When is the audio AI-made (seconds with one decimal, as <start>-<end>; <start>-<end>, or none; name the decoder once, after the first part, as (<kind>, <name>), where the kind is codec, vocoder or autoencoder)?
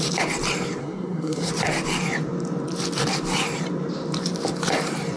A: 0.8-1.5 (codec, SNAC)